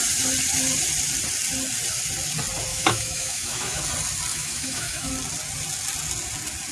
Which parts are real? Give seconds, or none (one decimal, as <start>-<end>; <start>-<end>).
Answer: 0.0-2.7; 3.8-4.3; 5.1-6.7

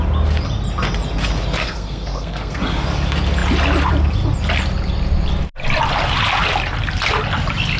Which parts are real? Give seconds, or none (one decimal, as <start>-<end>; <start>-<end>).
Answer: 0.0-1.6; 2.6-7.8